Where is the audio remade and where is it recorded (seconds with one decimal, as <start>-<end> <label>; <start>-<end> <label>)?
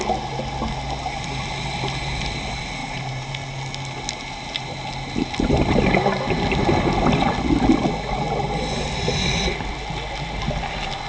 0.0-2.8 recorded; 2.8-3.3 remade; 3.3-11.1 recorded